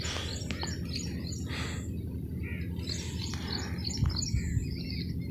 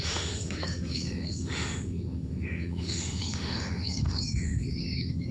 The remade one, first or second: second